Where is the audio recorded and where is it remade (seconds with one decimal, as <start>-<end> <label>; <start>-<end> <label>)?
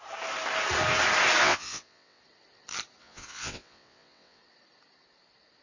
0.0-1.4 recorded; 1.4-2.2 remade; 2.2-3.0 recorded; 3.0-4.4 remade; 4.4-5.6 recorded